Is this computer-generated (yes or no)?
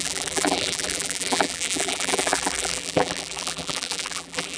yes